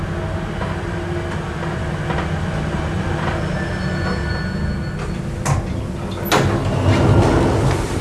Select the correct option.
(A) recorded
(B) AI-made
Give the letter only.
A